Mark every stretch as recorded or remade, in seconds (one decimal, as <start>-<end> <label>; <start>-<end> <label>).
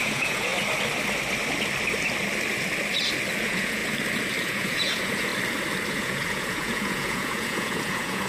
0.0-0.5 remade; 0.5-3.4 recorded; 3.4-3.8 remade; 3.8-4.4 recorded; 4.4-5.3 remade; 5.3-5.9 recorded; 5.9-8.3 remade